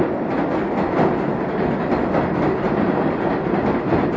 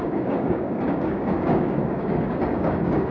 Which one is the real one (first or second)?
first